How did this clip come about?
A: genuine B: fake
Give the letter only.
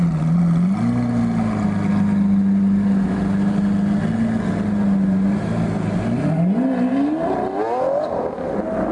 A